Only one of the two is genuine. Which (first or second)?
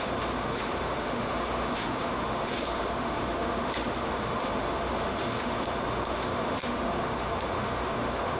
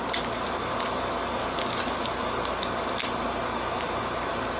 second